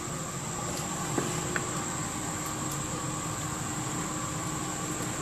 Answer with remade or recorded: recorded